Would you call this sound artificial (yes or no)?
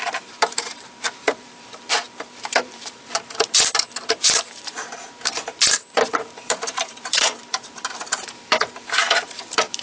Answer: yes